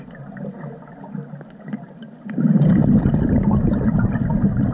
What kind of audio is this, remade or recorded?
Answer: recorded